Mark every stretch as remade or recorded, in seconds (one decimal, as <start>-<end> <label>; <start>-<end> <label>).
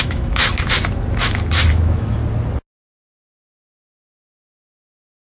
0.0-0.5 remade; 0.5-1.7 recorded; 1.7-2.2 remade; 2.2-5.3 recorded